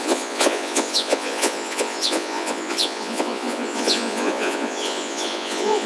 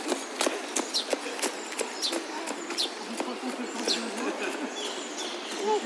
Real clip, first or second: second